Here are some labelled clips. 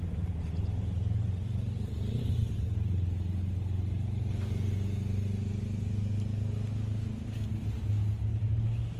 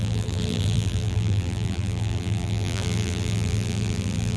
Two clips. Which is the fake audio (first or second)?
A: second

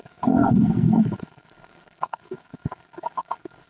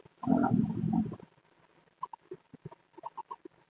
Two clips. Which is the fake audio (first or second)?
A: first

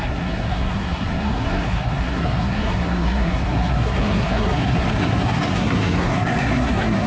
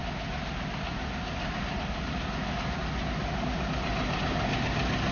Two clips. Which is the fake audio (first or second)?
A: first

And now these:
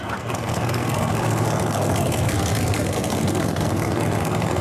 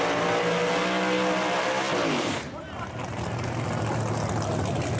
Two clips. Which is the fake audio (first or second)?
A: first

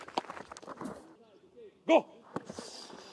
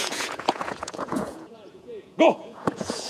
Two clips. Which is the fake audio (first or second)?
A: second